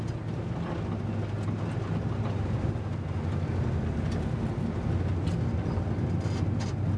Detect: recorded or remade recorded